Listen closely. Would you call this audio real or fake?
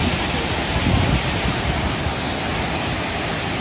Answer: real